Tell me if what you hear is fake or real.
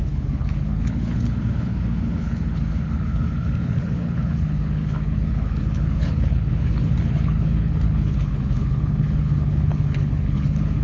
fake